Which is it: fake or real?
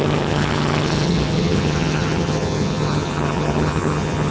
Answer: fake